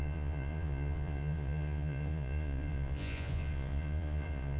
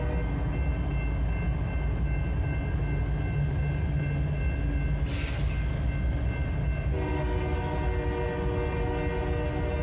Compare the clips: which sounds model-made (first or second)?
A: first